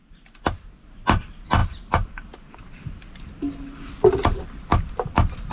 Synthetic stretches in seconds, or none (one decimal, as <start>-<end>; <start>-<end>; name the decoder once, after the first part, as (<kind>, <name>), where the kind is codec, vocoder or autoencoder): none